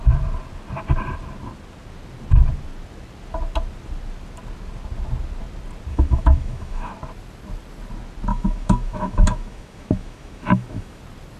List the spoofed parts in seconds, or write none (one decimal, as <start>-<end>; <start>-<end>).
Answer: 5.9-6.9; 8.3-11.0